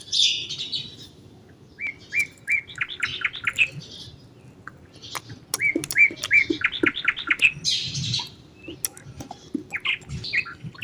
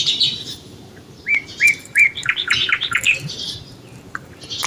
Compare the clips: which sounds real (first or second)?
first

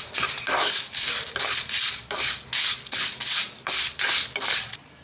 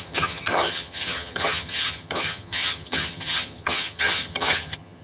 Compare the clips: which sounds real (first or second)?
first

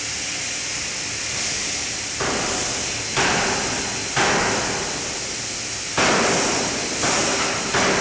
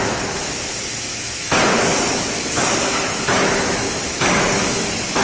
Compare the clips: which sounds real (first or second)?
first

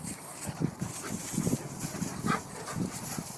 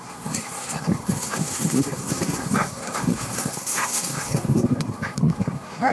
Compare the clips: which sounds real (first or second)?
first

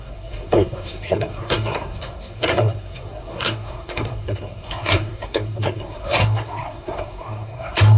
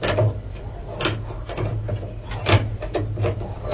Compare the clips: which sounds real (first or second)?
second